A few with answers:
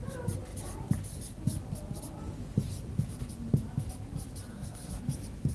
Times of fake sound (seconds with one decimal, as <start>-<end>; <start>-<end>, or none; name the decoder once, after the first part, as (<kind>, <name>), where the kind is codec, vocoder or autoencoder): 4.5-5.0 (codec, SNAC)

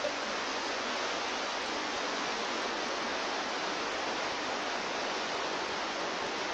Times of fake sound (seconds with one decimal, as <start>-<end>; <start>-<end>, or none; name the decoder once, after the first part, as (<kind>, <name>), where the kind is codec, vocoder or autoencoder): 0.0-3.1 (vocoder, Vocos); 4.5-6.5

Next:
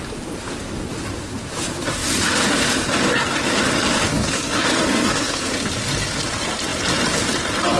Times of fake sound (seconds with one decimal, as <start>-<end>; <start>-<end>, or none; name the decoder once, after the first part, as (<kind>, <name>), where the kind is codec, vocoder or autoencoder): 4.1-5.5 (codec, SNAC)

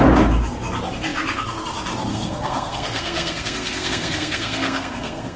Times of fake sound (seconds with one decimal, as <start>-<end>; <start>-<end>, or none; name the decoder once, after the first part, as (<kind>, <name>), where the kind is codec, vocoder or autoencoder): 2.1-5.4 (codec, SNAC)

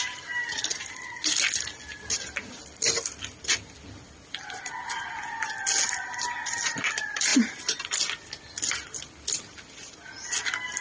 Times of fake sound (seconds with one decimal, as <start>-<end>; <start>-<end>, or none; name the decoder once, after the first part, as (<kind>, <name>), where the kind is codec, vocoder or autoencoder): none

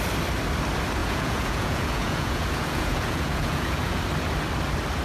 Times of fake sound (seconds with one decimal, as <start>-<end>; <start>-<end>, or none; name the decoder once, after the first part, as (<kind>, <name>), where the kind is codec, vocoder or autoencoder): 1.0-4.0 (vocoder, Vocos)